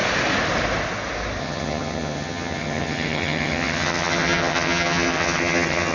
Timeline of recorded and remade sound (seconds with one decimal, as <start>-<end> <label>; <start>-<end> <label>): 0.0-1.4 recorded; 1.4-5.9 remade